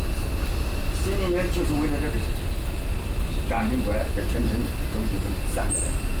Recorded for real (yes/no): yes